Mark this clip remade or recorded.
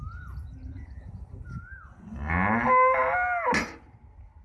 recorded